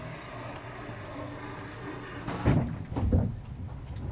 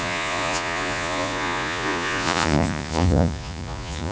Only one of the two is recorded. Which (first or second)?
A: first